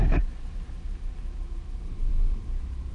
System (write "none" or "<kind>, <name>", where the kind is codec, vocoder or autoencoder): vocoder, BigVGAN v2